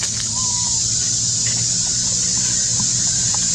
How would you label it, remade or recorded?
recorded